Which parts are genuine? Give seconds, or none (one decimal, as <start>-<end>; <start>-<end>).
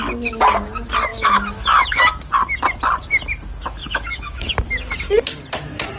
0.0-1.1; 2.3-3.8; 4.5-6.0